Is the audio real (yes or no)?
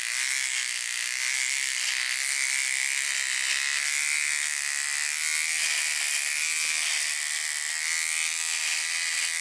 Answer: yes